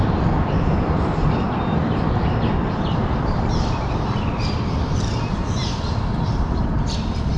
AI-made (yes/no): yes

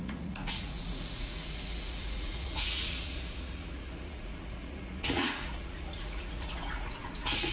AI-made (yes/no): yes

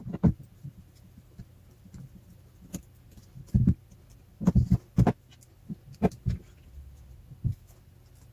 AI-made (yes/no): no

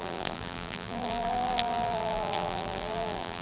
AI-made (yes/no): yes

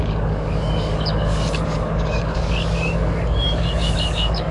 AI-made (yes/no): yes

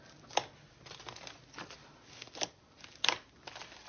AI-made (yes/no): no